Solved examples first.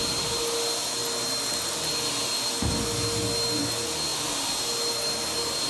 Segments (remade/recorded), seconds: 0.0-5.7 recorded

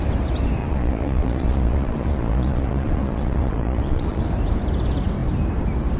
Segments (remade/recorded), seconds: 0.0-0.6 recorded; 0.6-4.2 remade; 4.2-6.0 recorded

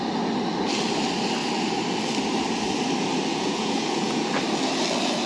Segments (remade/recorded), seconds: 0.0-3.3 recorded; 3.3-4.2 remade; 4.2-5.3 recorded

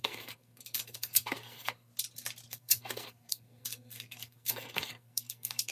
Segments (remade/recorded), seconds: 0.0-1.9 remade; 1.9-2.5 recorded; 2.5-5.7 remade

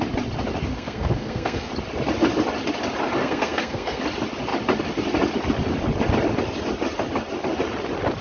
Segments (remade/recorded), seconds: 0.0-0.7 recorded; 0.7-1.7 remade; 1.7-3.2 recorded; 3.2-4.0 remade; 4.0-8.2 recorded

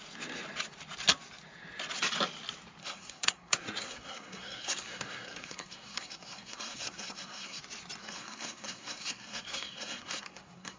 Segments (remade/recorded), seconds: 0.0-2.8 recorded; 2.8-7.6 remade; 7.6-8.0 recorded; 8.0-10.8 remade